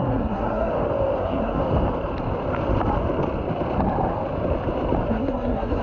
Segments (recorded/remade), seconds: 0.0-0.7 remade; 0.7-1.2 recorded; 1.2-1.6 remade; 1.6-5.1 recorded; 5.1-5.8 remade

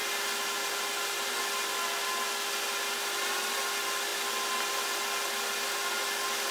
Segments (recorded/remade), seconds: 0.0-6.5 recorded

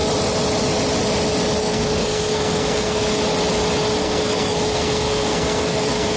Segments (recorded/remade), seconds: 0.0-1.6 recorded; 1.6-3.2 remade; 3.2-4.0 recorded; 4.0-6.2 remade

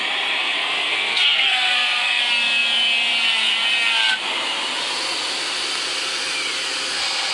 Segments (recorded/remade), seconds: 0.0-0.4 recorded; 0.4-2.2 remade; 2.2-7.3 recorded

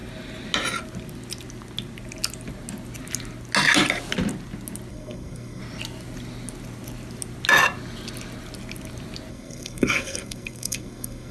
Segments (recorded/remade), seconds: 0.0-4.9 recorded; 4.9-5.6 remade; 5.6-9.3 recorded; 9.3-11.3 remade

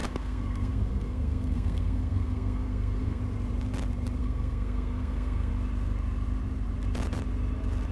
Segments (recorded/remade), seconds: 0.0-3.2 remade; 3.2-4.2 recorded; 4.2-5.5 remade; 5.5-7.9 recorded